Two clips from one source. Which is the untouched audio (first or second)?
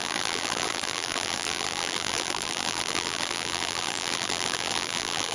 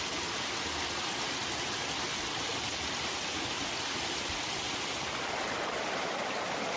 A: second